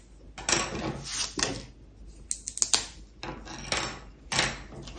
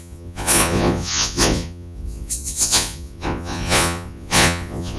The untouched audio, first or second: first